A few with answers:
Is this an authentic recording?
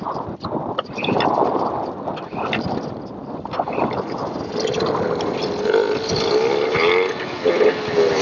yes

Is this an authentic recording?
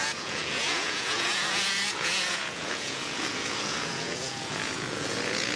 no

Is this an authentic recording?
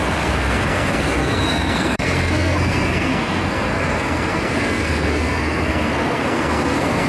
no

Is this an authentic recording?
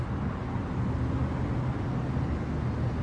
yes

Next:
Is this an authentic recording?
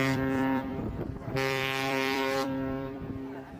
no